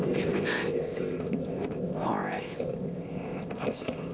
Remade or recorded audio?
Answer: remade